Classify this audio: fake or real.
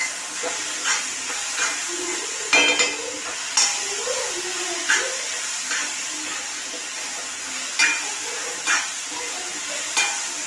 real